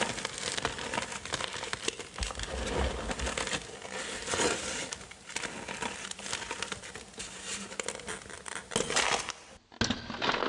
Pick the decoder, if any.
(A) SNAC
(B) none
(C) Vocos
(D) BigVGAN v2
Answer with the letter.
B